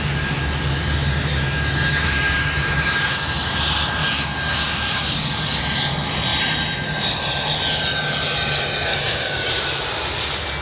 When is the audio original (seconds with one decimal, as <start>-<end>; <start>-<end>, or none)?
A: 0.0-1.0; 3.6-4.0; 5.6-8.9; 9.5-10.6